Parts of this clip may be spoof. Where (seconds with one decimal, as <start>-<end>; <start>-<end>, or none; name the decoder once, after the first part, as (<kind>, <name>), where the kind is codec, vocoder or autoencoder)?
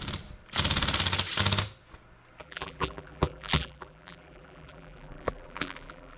2.4-6.2 (vocoder, BigVGAN v2)